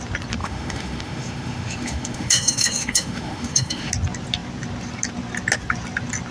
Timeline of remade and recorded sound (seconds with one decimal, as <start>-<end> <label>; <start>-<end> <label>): 0.0-0.4 recorded; 0.4-3.9 remade; 3.9-6.3 recorded